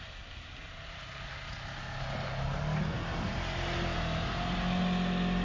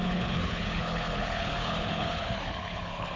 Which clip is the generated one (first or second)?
second